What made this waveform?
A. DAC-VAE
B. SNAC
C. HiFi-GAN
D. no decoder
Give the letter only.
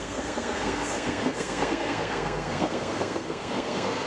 B